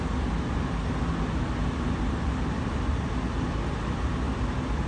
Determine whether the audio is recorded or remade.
recorded